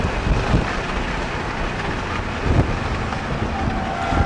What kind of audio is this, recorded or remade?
recorded